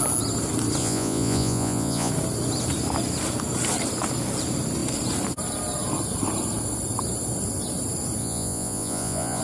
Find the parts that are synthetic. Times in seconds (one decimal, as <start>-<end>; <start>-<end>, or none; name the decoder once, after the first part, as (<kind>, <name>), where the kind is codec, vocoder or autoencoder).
0.8-2.1 (vocoder, Vocos); 8.2-9.4